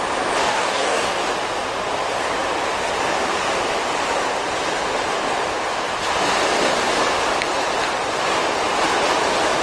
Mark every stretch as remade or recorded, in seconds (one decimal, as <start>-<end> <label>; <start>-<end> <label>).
0.0-0.4 recorded; 0.4-1.2 remade; 1.2-9.6 recorded